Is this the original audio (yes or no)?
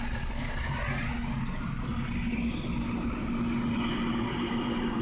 yes